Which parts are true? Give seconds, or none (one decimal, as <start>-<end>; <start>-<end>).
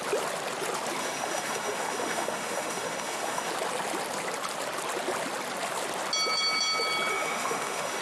0.0-1.0; 3.5-7.1